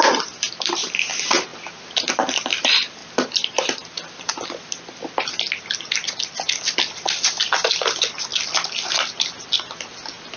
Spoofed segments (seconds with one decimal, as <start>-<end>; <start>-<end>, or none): none